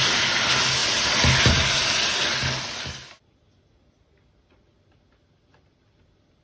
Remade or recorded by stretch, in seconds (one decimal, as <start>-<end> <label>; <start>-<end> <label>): 0.0-6.4 recorded